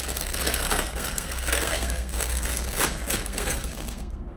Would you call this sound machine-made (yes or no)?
yes